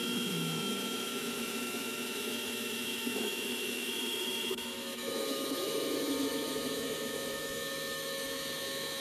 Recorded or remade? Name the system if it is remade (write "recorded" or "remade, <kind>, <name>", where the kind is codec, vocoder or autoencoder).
remade, autoencoder, DAC-VAE